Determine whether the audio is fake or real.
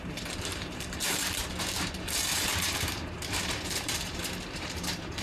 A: fake